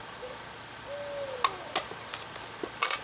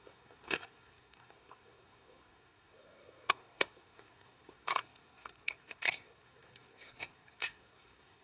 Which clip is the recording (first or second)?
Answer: first